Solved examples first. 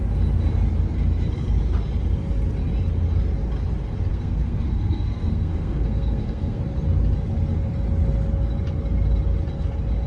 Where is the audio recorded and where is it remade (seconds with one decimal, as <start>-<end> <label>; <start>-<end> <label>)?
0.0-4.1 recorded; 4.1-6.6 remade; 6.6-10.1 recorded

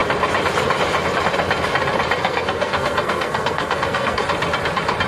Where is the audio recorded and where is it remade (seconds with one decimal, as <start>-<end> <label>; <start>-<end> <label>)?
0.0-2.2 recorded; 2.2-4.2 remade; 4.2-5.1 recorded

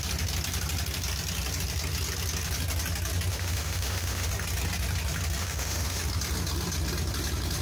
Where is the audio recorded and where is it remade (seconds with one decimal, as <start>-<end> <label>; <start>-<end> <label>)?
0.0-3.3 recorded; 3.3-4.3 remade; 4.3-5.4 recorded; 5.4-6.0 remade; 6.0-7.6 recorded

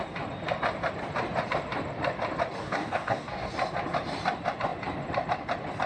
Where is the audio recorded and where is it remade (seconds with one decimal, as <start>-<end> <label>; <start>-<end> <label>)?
0.0-2.6 recorded; 2.6-3.5 remade; 3.5-5.9 recorded

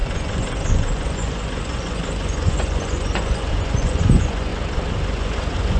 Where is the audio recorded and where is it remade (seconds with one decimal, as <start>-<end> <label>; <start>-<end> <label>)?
0.0-4.5 remade; 4.5-5.0 recorded; 5.0-5.8 remade